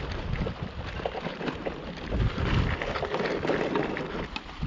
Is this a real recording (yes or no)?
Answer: yes